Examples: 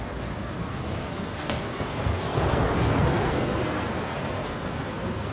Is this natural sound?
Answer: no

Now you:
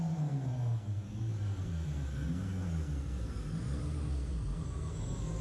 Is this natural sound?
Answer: no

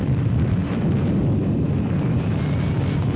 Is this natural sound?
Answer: yes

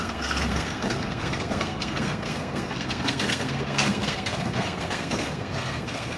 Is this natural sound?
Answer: no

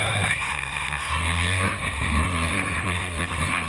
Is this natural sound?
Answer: no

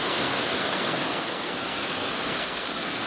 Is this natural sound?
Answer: no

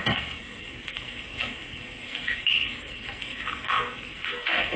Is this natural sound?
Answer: no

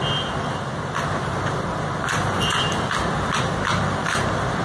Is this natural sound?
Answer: yes